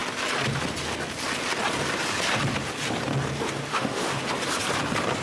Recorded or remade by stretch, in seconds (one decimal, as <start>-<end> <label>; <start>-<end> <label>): 0.0-3.7 recorded; 3.7-4.2 remade; 4.2-5.2 recorded